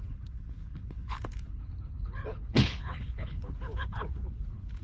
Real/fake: fake